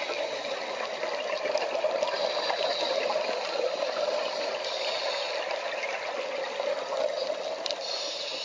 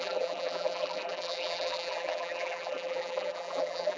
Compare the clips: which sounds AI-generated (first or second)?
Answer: second